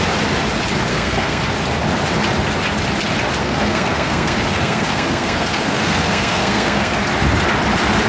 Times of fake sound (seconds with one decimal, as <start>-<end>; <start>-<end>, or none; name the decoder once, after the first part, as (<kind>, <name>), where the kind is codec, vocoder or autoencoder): 0.9-1.4 (codec, SNAC); 3.4-7.0